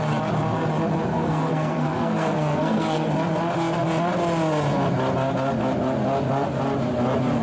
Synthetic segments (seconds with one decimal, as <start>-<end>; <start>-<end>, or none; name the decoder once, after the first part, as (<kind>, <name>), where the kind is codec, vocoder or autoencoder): 1.1-3.1 (codec, SNAC)